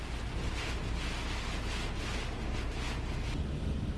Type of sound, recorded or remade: recorded